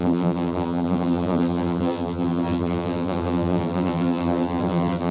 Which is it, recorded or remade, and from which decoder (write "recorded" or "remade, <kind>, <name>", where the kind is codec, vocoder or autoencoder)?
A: remade, vocoder, BigVGAN v2